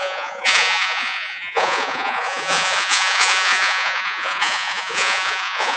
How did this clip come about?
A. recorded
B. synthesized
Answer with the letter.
B